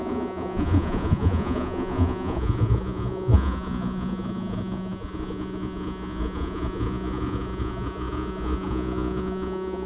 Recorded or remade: remade